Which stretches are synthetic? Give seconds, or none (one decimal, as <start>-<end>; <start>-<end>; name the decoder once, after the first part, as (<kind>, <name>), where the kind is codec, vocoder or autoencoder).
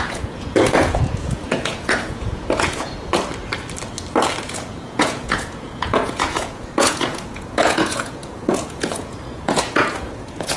0.0-3.1 (vocoder, Vocos); 4.4-10.6